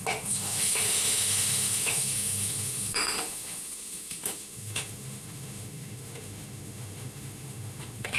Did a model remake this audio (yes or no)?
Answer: yes